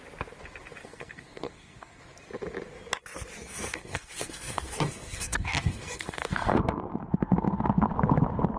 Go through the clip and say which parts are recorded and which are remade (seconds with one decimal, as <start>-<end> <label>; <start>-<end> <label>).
0.0-0.8 recorded; 0.8-2.0 remade; 2.0-3.4 recorded; 3.4-7.9 remade; 7.9-8.6 recorded